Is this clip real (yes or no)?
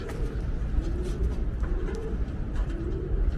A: no